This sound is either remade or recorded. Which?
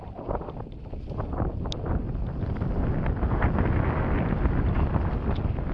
recorded